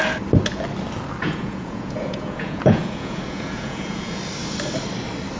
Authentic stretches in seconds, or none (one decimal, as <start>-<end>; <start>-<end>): 0.0-1.2; 4.2-5.4

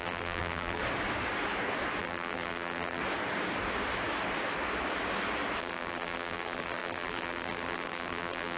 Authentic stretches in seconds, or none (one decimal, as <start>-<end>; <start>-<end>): 0.8-2.0; 3.0-5.6

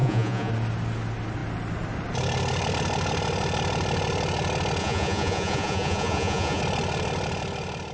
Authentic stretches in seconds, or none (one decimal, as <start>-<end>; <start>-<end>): 0.5-4.8; 6.6-7.9

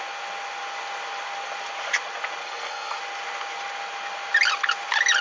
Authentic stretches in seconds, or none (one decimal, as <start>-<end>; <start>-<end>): 0.0-2.4; 3.0-5.2

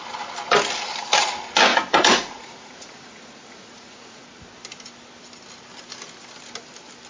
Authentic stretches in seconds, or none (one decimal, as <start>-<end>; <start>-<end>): 0.0-1.7; 4.2-7.1

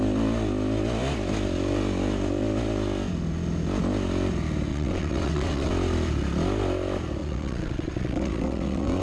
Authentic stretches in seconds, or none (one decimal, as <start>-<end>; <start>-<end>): 0.0-4.7; 5.7-7.2